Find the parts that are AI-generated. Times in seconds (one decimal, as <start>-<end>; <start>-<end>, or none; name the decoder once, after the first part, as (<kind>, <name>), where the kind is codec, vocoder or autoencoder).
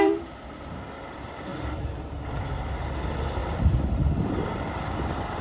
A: 0.0-1.5 (vocoder, BigVGAN v2); 2.8-5.4